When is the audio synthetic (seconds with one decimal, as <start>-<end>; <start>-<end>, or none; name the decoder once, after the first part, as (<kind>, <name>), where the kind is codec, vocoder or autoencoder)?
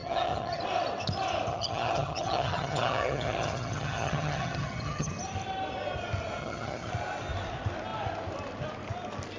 0.0-0.6 (vocoder, HiFi-GAN); 1.5-5.1; 6.4-6.9